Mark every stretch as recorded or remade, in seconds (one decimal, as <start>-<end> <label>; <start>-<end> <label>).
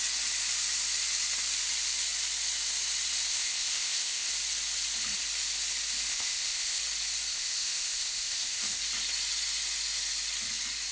0.0-3.3 recorded; 3.3-4.3 remade; 4.3-6.1 recorded; 6.1-6.8 remade; 6.8-7.3 recorded; 7.3-8.8 remade; 8.8-10.9 recorded